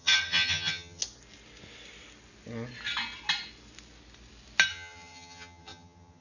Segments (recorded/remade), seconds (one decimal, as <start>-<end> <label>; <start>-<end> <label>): 0.0-1.0 remade; 1.0-4.7 recorded; 4.7-6.2 remade